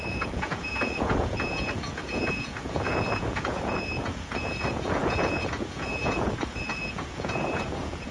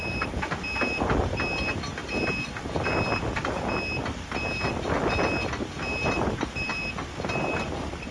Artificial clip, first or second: first